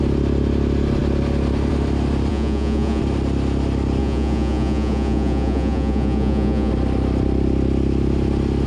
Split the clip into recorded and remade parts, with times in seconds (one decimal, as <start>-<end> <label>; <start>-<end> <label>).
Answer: 0.0-2.3 recorded; 2.3-3.0 remade; 3.0-4.0 recorded; 4.0-6.7 remade; 6.7-8.7 recorded